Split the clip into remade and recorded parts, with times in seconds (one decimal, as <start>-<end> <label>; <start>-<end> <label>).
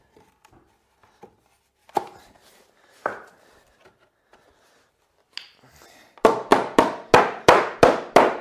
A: 0.0-1.8 recorded; 1.8-3.3 remade; 3.3-8.4 recorded